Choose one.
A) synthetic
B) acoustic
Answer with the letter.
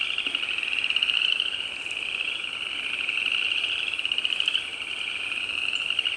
B